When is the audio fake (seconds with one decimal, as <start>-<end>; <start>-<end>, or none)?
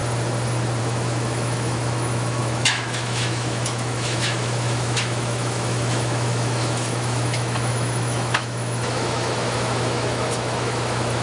0.8-11.2